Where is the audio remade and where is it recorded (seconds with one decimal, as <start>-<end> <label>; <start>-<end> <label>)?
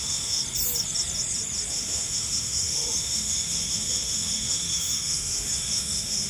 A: 0.0-0.4 remade; 0.4-1.7 recorded; 1.7-6.3 remade